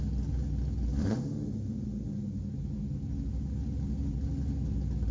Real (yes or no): yes